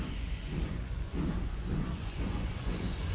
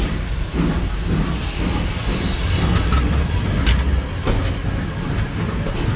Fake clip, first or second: first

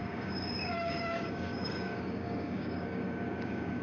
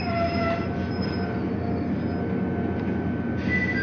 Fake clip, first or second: first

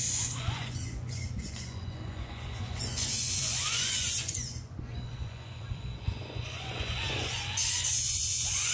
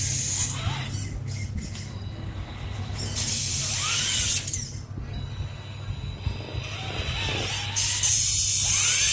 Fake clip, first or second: first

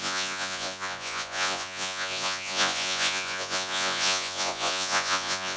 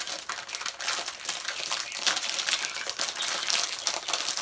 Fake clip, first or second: first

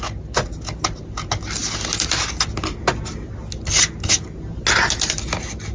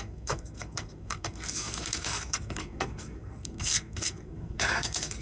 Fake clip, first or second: second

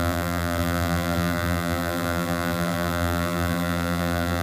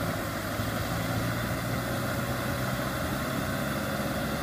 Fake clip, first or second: first